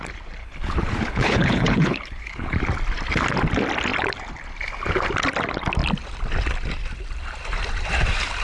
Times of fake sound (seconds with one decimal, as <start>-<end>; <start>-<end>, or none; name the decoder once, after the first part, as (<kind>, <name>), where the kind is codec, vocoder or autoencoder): 0.4-2.6 (codec, HILCodec)